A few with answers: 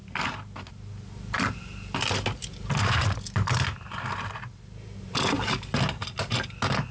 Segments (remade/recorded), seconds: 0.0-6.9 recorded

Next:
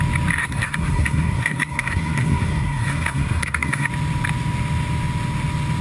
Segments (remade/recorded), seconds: 0.0-0.4 recorded; 0.4-3.9 remade; 3.9-5.8 recorded